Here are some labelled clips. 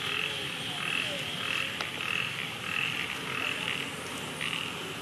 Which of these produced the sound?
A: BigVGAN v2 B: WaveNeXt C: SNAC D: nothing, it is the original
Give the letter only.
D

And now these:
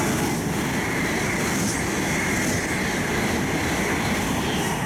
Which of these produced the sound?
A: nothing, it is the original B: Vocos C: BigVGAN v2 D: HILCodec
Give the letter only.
A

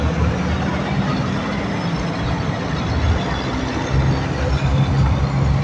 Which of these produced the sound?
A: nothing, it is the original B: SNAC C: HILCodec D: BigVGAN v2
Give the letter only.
A